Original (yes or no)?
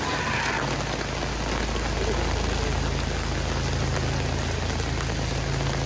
yes